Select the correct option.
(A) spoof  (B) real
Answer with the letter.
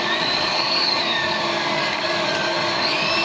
A